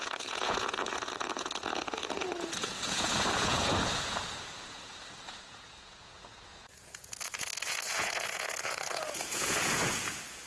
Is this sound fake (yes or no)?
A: yes